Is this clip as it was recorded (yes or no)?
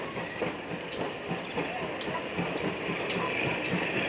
yes